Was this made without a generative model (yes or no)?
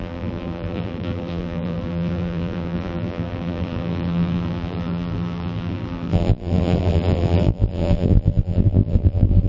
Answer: no